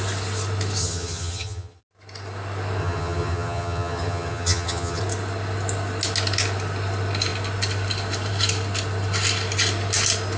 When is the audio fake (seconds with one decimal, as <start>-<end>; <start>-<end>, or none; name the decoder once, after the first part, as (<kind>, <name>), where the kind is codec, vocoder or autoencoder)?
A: 0.8-1.8 (vocoder, HiFi-GAN); 2.8-5.0